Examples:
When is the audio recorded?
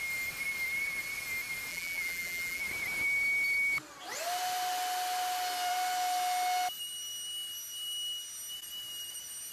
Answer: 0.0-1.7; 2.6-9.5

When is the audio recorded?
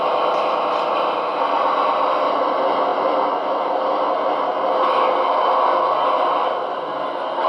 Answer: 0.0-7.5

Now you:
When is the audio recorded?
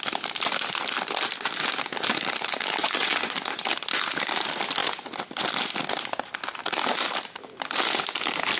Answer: 0.0-2.8; 3.6-8.6